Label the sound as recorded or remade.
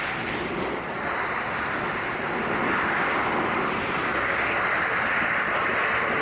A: recorded